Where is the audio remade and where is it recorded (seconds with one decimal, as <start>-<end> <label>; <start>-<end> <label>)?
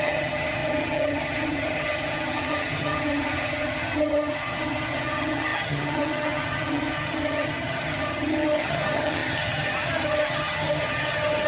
0.0-11.5 remade